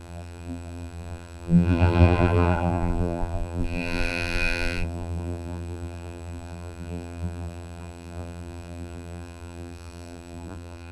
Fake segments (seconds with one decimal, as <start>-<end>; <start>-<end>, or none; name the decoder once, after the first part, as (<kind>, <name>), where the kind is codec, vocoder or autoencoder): 0.0-10.9 (vocoder, BigVGAN v2)